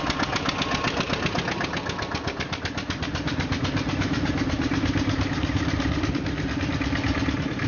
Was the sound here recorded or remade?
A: recorded